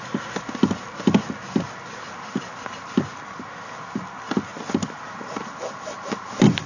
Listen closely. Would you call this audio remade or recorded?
recorded